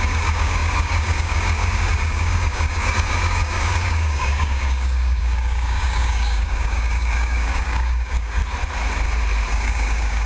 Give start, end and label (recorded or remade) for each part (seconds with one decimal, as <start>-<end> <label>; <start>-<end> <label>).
0.0-8.4 remade; 8.4-9.5 recorded; 9.5-10.3 remade